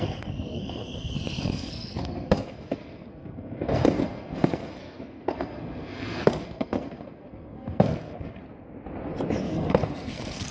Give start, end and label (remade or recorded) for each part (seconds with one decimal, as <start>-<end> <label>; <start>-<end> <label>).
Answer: 0.0-8.4 remade; 8.4-9.4 recorded; 9.4-10.5 remade